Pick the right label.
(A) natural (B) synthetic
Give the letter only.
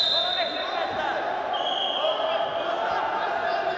A